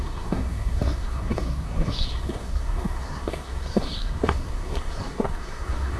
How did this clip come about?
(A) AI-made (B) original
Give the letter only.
A